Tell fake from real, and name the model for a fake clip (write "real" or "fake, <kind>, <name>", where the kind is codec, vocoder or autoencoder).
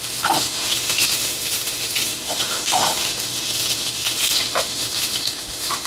fake, autoencoder, DAC-VAE